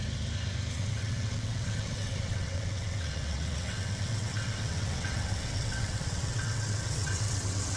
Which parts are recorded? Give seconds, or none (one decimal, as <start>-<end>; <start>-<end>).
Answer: 0.0-0.7